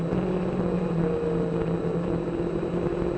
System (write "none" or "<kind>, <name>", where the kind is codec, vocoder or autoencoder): none